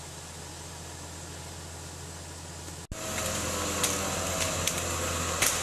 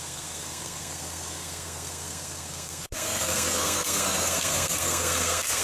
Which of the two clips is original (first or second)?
first